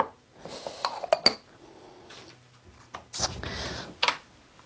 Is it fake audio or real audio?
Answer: real